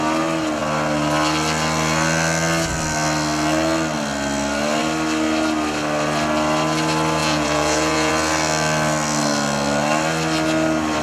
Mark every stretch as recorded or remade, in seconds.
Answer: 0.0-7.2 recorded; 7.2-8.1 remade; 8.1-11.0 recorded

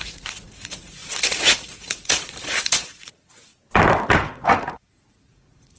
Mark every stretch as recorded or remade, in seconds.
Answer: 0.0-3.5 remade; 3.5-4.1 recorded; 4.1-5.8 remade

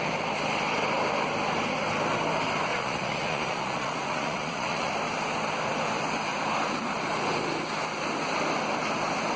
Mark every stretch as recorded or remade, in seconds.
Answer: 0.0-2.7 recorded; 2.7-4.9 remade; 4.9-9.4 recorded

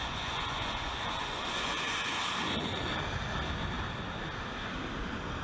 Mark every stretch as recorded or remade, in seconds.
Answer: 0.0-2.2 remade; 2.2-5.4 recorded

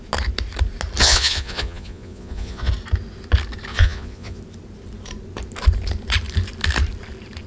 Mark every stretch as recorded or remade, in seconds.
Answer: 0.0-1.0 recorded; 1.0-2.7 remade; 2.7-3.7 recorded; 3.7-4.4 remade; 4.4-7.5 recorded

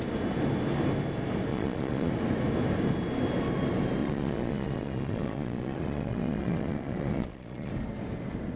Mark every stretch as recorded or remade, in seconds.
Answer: 0.0-1.5 recorded; 1.5-2.1 remade; 2.1-4.0 recorded; 4.0-7.7 remade; 7.7-8.6 recorded